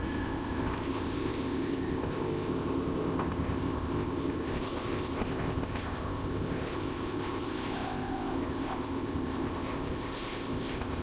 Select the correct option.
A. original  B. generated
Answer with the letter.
B